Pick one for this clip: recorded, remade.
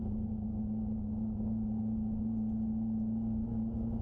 recorded